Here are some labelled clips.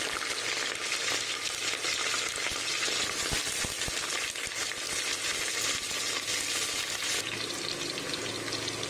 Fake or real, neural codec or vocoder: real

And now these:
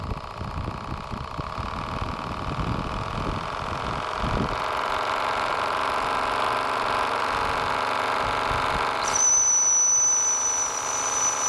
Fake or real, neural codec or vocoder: real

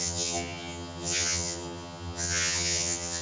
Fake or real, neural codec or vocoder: fake, vocoder, HiFi-GAN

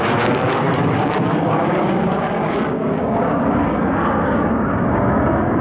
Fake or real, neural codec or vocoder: fake, codec, DAC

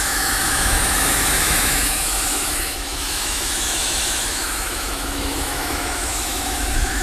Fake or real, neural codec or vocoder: fake, autoencoder, DAC-VAE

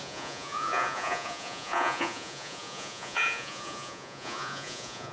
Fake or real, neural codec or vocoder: fake, vocoder, Vocos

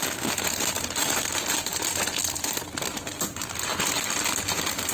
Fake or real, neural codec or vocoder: real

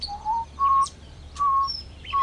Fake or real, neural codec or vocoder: fake, vocoder, BigVGAN v2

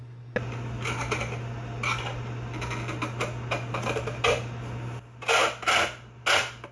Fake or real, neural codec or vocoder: real